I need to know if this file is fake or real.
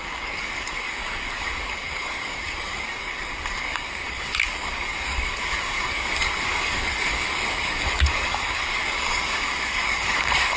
fake